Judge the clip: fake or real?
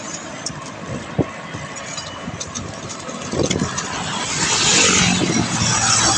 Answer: real